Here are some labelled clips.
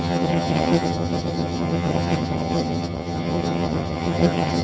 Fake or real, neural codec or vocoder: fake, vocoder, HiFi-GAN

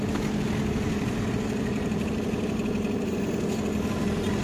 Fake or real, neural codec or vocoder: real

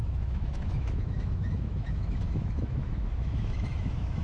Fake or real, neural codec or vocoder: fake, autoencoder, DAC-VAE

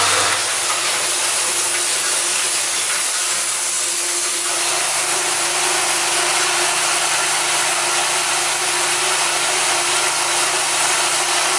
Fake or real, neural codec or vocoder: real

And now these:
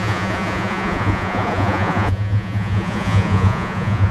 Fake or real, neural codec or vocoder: fake, vocoder, Vocos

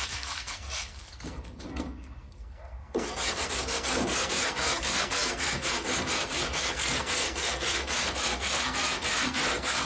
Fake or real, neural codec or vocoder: fake, codec, SNAC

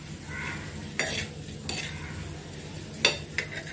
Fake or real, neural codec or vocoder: real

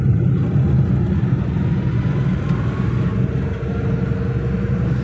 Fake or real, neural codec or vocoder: real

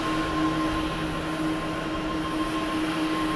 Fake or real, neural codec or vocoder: real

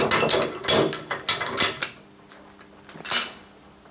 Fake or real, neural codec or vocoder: real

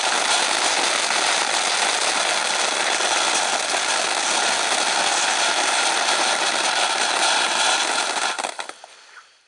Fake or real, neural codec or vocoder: real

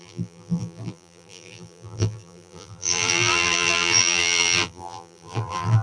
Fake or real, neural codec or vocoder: fake, vocoder, BigVGAN v2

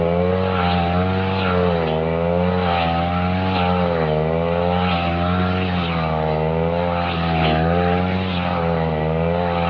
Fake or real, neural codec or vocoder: real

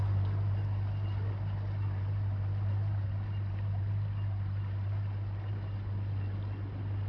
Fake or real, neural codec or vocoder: real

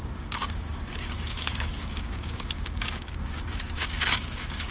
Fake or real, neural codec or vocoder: fake, codec, DAC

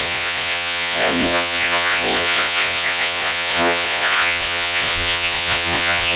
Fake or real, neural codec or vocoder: fake, vocoder, Vocos